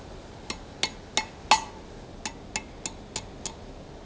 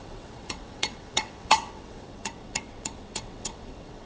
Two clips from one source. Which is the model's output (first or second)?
second